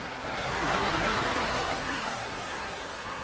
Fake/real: fake